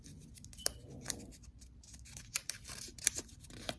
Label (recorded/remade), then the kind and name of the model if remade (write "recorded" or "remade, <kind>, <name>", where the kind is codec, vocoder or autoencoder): remade, vocoder, BigVGAN v2